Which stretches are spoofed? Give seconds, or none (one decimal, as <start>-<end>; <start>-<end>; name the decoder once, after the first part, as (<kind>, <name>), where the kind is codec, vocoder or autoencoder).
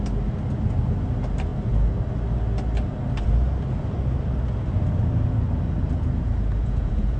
6.6-7.2 (vocoder, Vocos)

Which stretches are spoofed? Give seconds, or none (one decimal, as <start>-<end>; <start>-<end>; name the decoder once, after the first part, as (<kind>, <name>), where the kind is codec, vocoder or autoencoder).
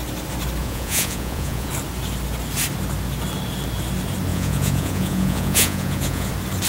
0.6-1.7 (vocoder, Vocos); 4.3-6.3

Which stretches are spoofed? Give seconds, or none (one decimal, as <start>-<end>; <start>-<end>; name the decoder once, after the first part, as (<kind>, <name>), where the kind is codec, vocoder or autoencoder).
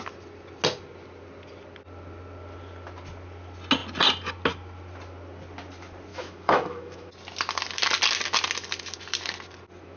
6.1-7.1 (autoencoder, DAC-VAE)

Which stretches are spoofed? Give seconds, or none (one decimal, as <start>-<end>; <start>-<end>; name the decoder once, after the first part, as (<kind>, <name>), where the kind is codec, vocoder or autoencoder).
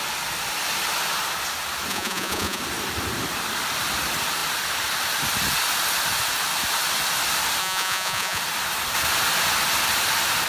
1.9-2.6 (vocoder, Vocos); 7.6-8.4